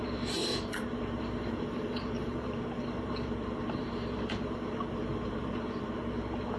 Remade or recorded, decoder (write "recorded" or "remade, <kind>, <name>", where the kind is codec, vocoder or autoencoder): remade, vocoder, BigVGAN v2